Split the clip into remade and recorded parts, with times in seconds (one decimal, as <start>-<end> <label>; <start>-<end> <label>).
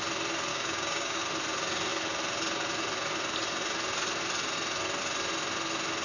0.0-0.5 recorded; 0.5-1.2 remade; 1.2-6.0 recorded